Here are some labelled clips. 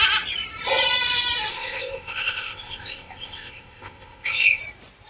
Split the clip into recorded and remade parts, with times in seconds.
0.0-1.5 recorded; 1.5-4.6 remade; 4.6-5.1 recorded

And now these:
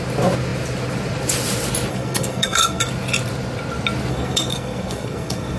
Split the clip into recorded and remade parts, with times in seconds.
0.0-1.9 recorded; 1.9-2.8 remade; 2.8-4.1 recorded; 4.1-5.6 remade

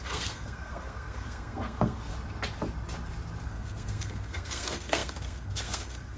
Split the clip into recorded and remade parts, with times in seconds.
0.0-2.1 remade; 2.1-3.4 recorded; 3.4-6.2 remade

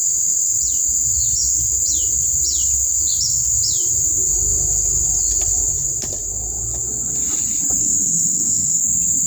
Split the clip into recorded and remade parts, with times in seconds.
0.0-7.8 recorded; 7.8-8.8 remade; 8.8-9.3 recorded

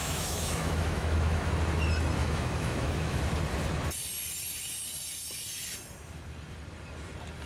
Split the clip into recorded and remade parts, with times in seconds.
0.0-1.5 remade; 1.5-2.2 recorded; 2.2-3.2 remade; 3.2-7.5 recorded

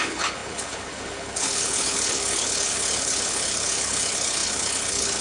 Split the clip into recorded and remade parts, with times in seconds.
0.0-5.2 remade